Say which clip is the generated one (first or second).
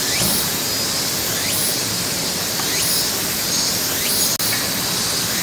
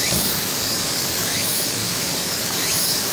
second